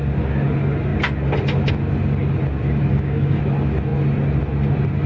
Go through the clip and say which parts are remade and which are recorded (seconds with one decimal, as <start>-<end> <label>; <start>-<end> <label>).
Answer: 0.0-2.9 recorded; 2.9-3.4 remade; 3.4-5.1 recorded